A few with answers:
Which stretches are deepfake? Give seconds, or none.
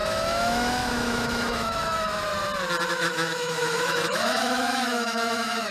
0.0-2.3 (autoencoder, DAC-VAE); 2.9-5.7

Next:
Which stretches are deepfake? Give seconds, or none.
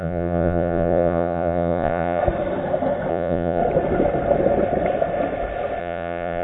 0.0-2.2 (vocoder, Vocos); 3.1-3.6; 5.8-6.4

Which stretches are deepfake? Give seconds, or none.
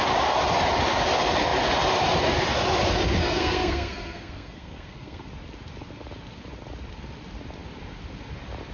3.2-5.3 (codec, SNAC)